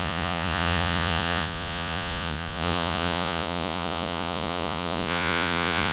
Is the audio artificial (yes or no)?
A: yes